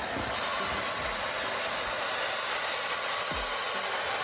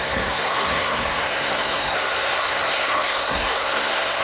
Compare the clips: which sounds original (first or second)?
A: first